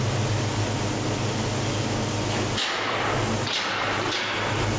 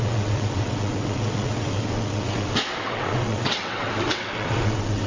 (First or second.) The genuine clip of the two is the first